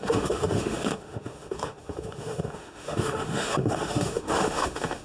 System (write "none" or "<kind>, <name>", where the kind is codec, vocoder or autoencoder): autoencoder, DAC-VAE